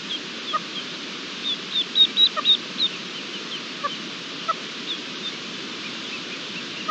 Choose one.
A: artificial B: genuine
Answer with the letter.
A